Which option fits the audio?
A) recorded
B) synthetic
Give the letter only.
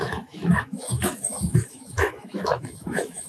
B